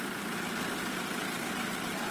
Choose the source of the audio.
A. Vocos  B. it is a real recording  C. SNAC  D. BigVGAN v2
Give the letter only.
B